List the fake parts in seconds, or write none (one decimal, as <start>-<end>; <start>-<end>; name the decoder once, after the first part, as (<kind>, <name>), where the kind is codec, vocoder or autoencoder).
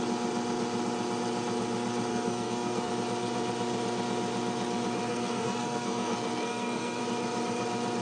2.1-2.9 (codec, SNAC); 5.1-7.0